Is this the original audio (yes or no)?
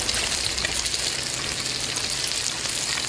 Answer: yes